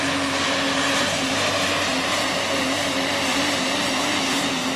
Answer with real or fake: fake